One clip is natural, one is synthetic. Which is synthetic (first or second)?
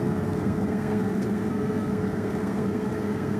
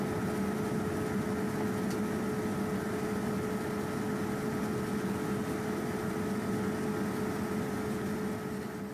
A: first